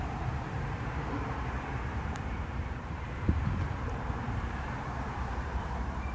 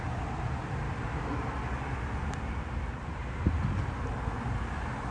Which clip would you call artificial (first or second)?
first